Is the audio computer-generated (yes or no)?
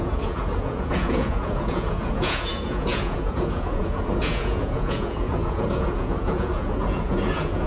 yes